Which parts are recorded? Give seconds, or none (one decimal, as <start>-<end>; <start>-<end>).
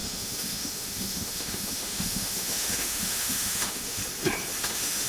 4.0-4.6